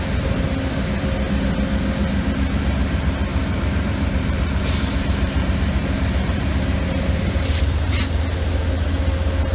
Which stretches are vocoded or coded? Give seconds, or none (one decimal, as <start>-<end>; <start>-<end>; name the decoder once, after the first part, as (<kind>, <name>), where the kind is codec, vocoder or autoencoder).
3.3-8.0 (vocoder, BigVGAN v2)